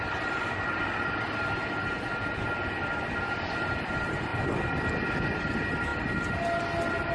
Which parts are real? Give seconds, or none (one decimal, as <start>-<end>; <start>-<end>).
0.0-7.1